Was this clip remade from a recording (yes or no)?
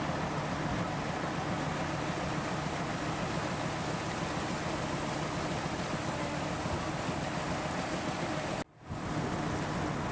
no